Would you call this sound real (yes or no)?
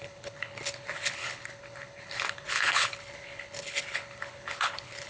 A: no